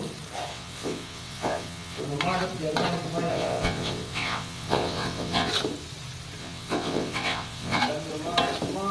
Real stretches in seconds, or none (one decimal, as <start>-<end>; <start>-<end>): 0.0-0.5; 2.0-3.3; 5.5-6.4; 7.8-8.9